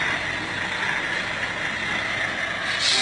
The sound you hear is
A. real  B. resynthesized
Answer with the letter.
A